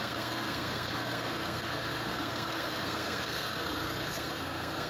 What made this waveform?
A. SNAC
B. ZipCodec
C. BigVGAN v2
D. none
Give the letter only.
A